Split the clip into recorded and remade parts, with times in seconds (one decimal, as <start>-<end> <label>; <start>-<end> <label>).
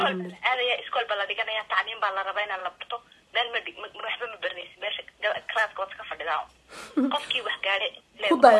0.0-8.6 recorded